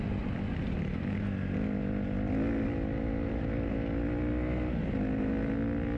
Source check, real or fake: real